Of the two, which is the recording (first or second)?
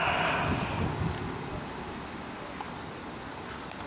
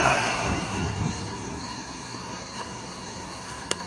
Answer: first